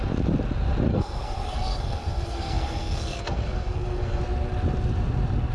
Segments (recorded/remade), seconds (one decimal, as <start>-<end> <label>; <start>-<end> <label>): 0.0-0.9 recorded; 0.9-4.2 remade; 4.2-5.5 recorded

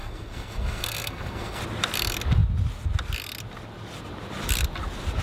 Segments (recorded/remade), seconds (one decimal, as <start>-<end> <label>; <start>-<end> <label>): 0.0-1.6 remade; 1.6-5.2 recorded

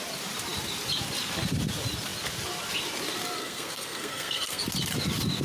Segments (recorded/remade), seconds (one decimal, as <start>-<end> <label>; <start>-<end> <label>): 0.0-3.4 recorded; 3.4-4.6 remade; 4.6-5.4 recorded

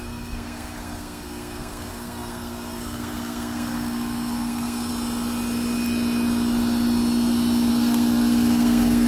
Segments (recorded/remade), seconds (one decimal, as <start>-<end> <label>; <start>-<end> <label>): 0.0-4.9 remade; 4.9-7.7 recorded; 7.7-9.1 remade

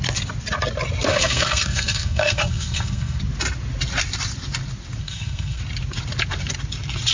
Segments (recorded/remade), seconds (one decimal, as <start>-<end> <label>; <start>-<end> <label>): 0.0-1.1 recorded; 1.1-3.2 remade; 3.2-5.0 recorded; 5.0-5.6 remade; 5.6-7.1 recorded